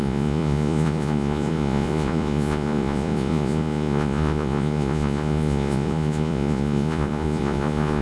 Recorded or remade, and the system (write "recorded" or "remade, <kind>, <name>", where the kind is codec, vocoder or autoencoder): remade, vocoder, Vocos